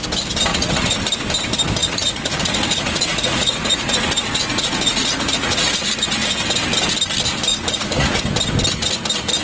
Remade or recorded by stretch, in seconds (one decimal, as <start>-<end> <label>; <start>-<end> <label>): 0.0-0.5 recorded; 0.5-1.0 remade; 1.0-1.8 recorded; 1.8-5.7 remade; 5.7-7.5 recorded; 7.5-8.2 remade; 8.2-9.4 recorded